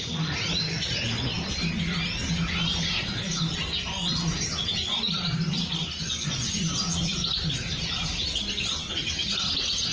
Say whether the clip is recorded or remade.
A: recorded